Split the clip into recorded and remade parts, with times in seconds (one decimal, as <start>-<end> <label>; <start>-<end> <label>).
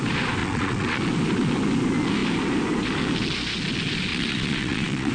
0.0-0.4 recorded; 0.4-1.0 remade; 1.0-4.1 recorded; 4.1-5.1 remade